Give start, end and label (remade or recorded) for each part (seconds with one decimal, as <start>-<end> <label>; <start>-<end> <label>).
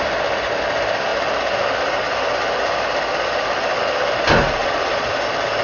0.0-4.6 recorded; 4.6-5.1 remade; 5.1-5.6 recorded